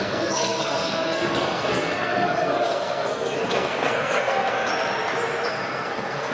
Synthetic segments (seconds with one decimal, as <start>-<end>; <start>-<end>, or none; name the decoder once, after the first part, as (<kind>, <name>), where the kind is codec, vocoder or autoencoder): 0.0-4.7 (codec, SNAC); 5.5-6.3